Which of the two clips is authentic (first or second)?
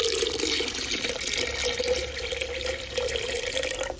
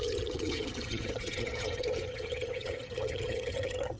first